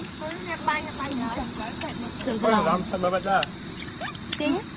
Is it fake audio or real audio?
fake